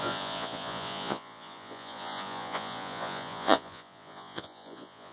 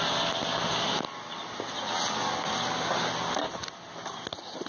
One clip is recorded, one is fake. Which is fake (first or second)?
first